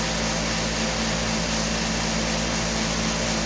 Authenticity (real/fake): real